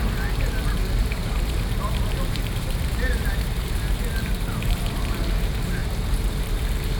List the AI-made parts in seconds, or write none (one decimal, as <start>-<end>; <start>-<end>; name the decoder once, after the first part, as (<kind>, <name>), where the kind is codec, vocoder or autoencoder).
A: 1.0-5.2 (vocoder, BigVGAN v2); 5.8-6.6